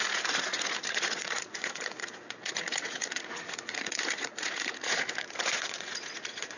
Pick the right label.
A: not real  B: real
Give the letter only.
A